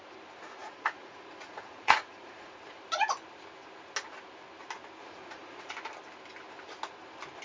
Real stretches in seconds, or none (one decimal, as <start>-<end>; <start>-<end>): 0.0-0.6; 2.8-5.0; 5.7-7.4